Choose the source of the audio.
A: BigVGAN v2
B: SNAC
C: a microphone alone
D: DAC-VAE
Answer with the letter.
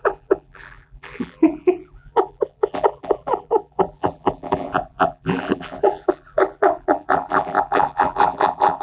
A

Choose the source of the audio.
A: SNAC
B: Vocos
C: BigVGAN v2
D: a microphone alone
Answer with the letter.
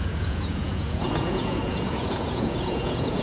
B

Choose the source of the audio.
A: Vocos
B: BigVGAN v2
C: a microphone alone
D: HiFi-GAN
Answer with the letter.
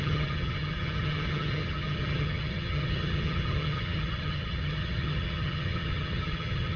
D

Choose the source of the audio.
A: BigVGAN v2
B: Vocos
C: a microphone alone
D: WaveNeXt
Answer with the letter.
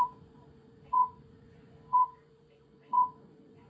B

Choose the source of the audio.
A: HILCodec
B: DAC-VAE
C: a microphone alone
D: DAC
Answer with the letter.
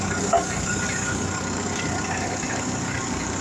D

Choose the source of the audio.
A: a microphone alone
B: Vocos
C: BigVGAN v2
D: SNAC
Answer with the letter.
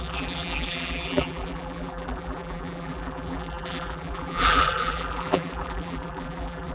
C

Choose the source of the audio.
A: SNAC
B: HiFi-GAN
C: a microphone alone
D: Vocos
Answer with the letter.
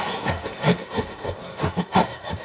A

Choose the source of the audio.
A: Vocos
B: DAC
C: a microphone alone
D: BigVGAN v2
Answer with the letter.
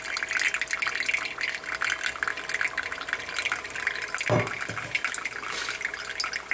C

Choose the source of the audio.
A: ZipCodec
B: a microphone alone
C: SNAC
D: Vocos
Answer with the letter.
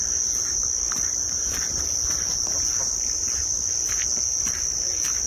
B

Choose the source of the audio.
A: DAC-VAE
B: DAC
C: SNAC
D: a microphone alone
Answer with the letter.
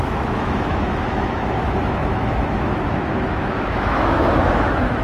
A